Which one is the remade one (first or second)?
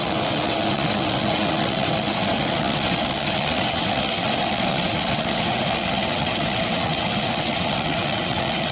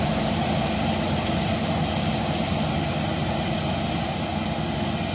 first